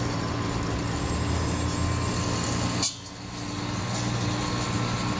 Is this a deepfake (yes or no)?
no